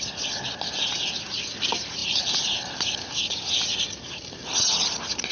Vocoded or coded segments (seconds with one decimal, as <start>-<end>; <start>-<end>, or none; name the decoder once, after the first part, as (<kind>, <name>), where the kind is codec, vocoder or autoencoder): none